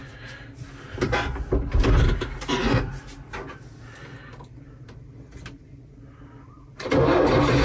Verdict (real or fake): real